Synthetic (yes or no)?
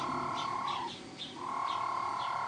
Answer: no